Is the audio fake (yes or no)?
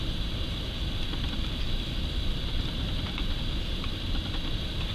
no